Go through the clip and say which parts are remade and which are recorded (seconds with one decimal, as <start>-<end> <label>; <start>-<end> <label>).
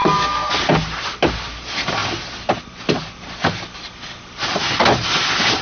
0.0-0.5 remade; 0.5-5.6 recorded